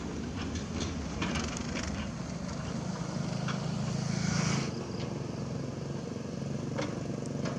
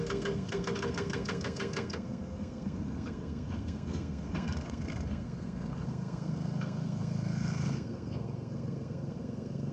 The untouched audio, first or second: first